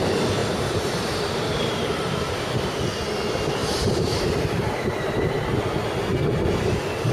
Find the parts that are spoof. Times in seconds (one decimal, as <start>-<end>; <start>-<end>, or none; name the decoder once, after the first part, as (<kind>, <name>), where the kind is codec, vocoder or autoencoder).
0.4-2.7 (vocoder, BigVGAN v2); 3.6-4.5